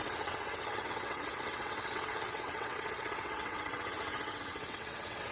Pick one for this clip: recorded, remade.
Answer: remade